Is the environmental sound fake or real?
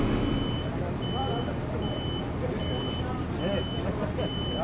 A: real